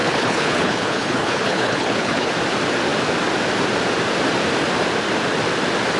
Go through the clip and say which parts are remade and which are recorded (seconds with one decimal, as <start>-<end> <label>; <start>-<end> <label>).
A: 0.0-2.3 remade; 2.3-6.0 recorded